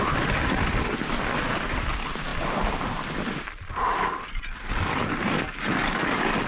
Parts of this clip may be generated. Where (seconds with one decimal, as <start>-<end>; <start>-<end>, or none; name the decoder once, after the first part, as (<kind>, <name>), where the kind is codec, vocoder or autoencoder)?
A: none